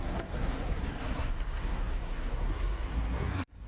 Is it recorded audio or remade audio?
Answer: remade